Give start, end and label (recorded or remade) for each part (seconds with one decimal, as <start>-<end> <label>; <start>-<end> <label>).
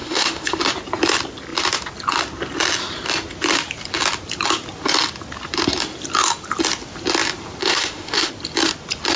0.0-0.6 remade; 0.6-7.6 recorded; 7.6-8.3 remade; 8.3-9.2 recorded